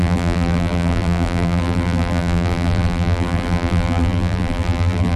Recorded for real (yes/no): no